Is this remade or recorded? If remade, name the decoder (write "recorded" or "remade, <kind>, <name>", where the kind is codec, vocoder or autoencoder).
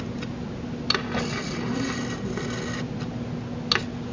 recorded